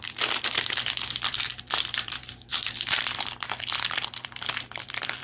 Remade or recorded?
remade